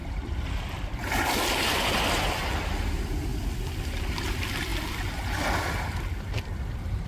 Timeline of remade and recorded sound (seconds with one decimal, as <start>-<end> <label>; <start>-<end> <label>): 0.0-7.1 recorded